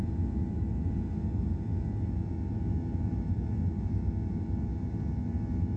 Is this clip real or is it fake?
real